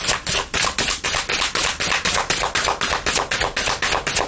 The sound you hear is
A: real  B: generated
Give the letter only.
A